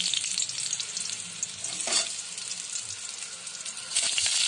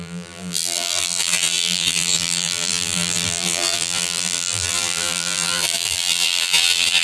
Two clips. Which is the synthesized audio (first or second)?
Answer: second